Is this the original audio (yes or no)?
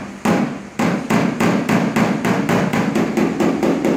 yes